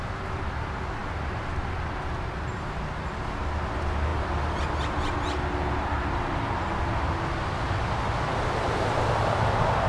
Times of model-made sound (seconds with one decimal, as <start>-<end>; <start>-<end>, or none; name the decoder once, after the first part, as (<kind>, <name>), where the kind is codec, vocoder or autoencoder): 1.0-1.5 (vocoder, BigVGAN v2)